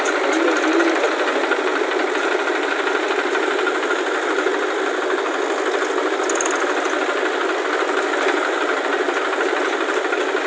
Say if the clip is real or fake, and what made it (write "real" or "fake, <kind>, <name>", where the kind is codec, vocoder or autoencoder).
real